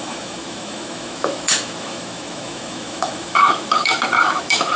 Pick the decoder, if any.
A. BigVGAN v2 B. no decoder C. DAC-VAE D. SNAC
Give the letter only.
C